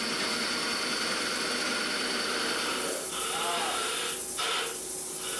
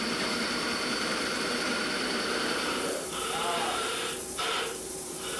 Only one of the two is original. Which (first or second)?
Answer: first